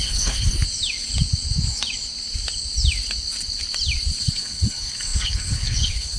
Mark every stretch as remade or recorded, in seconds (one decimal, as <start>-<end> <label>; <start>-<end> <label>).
0.0-0.5 remade; 0.5-4.2 recorded; 4.2-6.2 remade